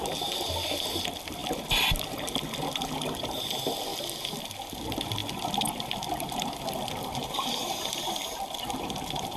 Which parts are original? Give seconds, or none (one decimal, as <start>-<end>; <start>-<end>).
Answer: 3.9-4.4

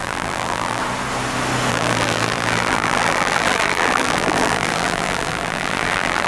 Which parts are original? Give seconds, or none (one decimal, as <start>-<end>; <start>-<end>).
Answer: 0.8-1.7

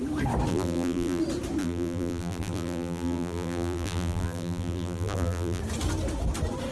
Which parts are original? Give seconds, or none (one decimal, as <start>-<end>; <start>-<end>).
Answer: 0.0-0.5; 1.2-1.6; 5.6-6.7